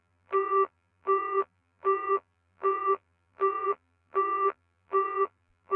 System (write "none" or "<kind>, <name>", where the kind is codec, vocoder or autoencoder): vocoder, BigVGAN v2